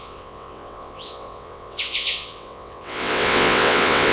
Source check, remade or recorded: remade